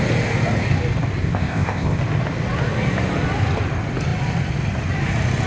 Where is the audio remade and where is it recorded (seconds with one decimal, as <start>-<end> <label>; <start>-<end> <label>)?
0.0-1.2 recorded; 1.2-2.0 remade; 2.0-5.5 recorded